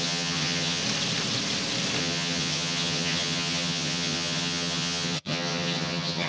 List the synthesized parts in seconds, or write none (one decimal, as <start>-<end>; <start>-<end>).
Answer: 0.0-0.8; 2.0-6.3